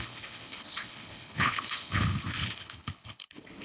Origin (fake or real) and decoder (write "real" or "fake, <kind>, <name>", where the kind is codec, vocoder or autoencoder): fake, codec, HILCodec